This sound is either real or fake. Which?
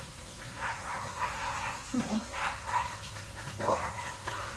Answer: fake